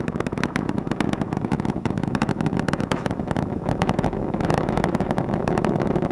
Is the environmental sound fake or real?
fake